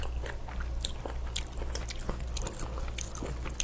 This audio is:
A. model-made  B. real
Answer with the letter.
B